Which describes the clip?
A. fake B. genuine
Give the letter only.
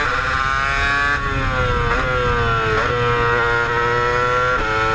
B